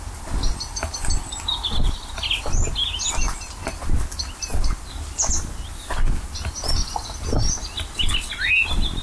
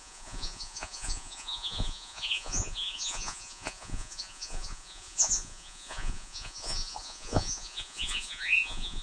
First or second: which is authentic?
first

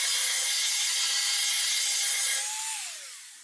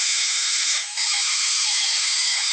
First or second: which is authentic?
first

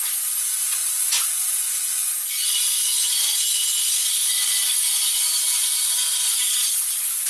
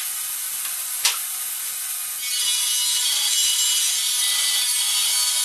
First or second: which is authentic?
second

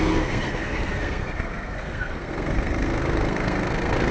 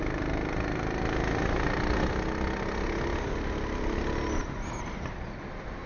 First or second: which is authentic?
second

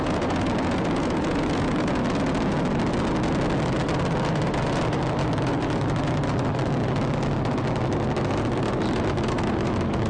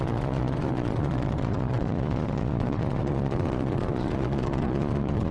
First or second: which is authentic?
first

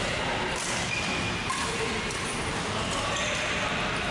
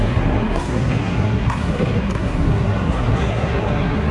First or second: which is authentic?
first